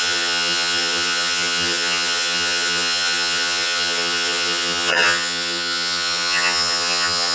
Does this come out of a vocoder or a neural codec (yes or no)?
yes